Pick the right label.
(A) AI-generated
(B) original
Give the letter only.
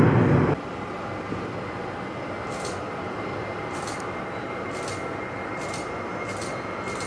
B